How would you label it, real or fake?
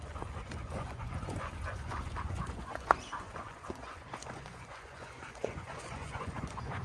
fake